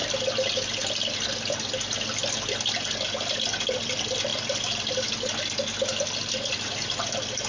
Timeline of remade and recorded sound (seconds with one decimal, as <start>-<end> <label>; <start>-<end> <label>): 0.0-7.5 recorded